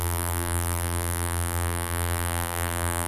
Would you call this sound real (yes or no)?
no